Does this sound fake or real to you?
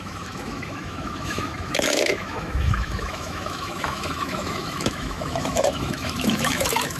fake